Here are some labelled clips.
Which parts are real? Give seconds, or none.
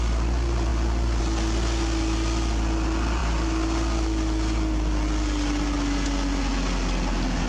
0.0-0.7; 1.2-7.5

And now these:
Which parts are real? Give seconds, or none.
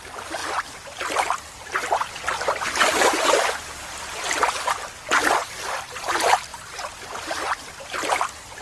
0.0-5.4; 6.1-6.5; 8.2-8.6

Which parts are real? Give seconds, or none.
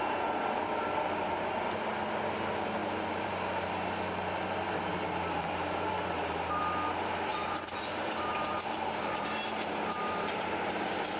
0.0-2.8; 3.3-4.9; 6.6-7.3; 10.7-11.2